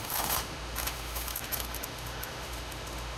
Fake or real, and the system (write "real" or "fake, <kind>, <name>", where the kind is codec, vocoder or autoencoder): fake, autoencoder, DAC-VAE